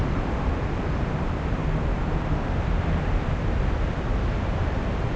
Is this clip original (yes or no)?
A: no